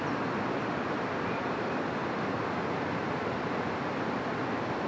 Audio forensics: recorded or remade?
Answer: recorded